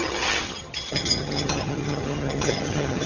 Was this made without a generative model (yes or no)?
no